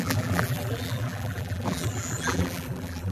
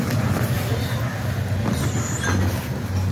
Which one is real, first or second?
second